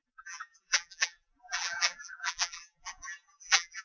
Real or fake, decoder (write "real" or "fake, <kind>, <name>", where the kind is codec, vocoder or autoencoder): fake, vocoder, BigVGAN v2